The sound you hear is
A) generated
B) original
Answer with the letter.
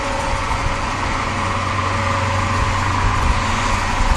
A